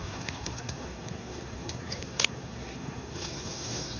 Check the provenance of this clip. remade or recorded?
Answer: remade